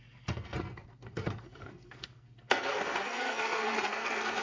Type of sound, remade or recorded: remade